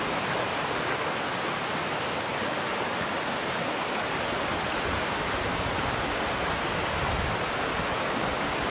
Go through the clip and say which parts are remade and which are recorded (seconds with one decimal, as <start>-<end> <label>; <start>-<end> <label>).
0.0-8.7 recorded